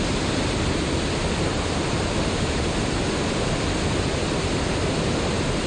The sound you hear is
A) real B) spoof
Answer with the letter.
A